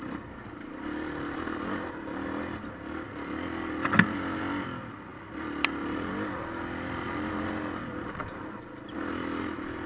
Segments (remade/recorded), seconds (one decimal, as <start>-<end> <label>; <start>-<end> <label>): 0.0-9.9 recorded